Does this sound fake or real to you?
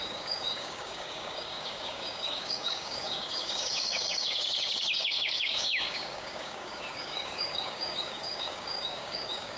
fake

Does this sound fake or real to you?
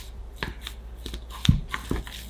real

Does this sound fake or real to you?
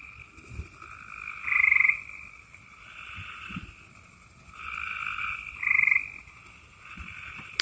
real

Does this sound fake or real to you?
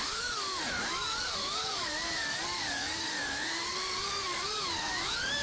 fake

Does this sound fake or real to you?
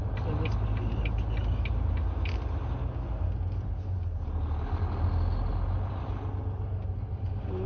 real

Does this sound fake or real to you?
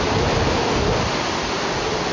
real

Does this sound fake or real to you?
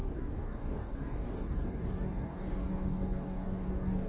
fake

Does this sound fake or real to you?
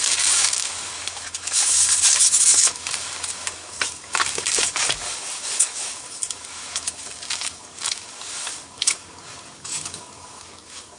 fake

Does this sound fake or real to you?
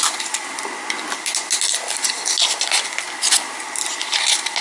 real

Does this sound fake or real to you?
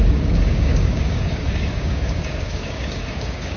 fake